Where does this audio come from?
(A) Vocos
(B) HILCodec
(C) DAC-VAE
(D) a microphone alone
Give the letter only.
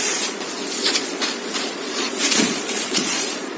A